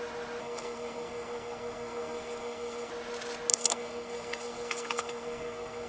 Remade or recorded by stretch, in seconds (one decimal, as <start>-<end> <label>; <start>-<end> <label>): 0.0-0.4 recorded; 0.4-2.9 remade; 2.9-3.5 recorded; 3.5-5.9 remade